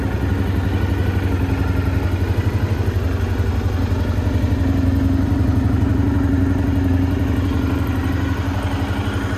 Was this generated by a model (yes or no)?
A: no